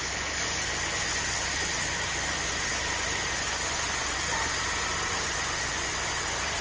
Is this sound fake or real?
fake